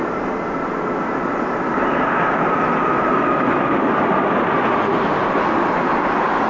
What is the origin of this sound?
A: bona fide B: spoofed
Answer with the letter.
A